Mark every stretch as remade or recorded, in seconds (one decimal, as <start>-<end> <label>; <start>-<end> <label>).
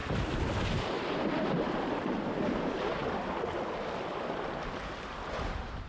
0.0-1.3 recorded; 1.3-3.0 remade; 3.0-4.8 recorded; 4.8-5.9 remade